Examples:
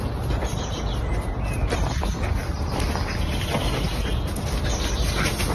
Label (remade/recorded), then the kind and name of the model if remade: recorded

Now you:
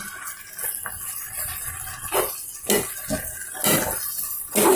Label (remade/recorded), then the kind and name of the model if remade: recorded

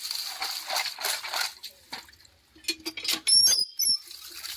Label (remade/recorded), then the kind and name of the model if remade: recorded